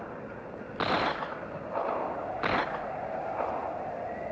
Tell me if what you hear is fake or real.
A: real